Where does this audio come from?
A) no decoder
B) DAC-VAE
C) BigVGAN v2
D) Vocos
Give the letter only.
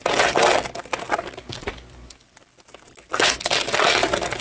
A